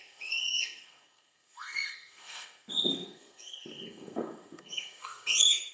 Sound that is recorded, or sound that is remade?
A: remade